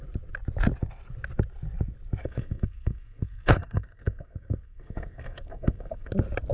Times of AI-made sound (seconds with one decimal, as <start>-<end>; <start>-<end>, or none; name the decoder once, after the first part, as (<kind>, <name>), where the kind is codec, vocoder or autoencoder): 2.2-6.1 (codec, SNAC)